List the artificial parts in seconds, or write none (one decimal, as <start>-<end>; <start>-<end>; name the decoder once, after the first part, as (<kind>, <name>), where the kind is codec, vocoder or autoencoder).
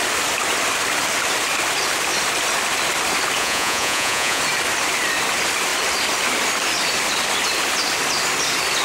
3.4-4.4 (vocoder, Vocos)